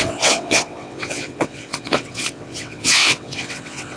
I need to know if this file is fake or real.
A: fake